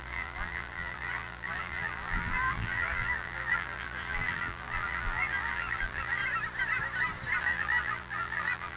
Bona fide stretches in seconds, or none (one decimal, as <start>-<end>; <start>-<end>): 6.2-7.4